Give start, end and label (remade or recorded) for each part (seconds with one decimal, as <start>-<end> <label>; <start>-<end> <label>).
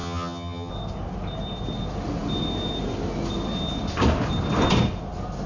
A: 0.0-0.7 remade; 0.7-5.5 recorded